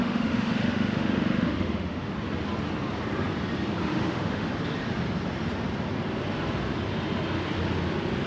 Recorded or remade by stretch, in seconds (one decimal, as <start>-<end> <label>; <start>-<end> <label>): 0.0-2.1 remade; 2.1-3.9 recorded; 3.9-4.5 remade; 4.5-8.3 recorded